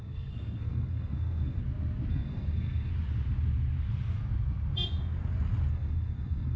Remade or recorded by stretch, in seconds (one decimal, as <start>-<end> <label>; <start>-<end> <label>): 0.0-1.6 remade; 1.6-2.1 recorded; 2.1-2.9 remade; 2.9-5.7 recorded; 5.7-6.6 remade